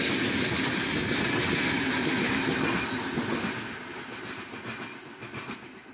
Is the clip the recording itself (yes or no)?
yes